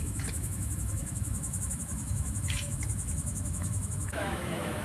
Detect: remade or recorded remade